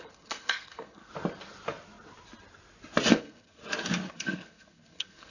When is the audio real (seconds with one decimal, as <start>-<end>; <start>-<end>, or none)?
1.1-3.1; 3.6-4.1